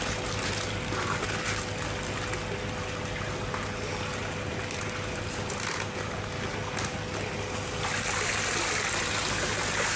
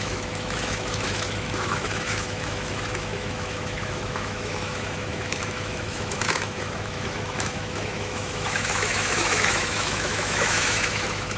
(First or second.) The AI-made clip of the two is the second